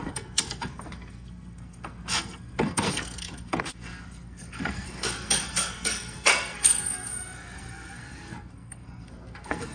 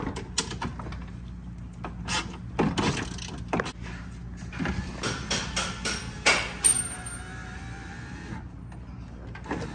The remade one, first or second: first